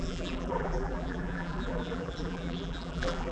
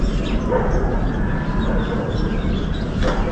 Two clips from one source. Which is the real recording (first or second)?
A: second